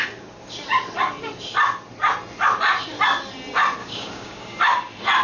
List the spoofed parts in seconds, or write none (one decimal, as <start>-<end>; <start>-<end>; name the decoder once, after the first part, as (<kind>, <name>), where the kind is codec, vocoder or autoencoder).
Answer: 3.8-4.6 (codec, DAC)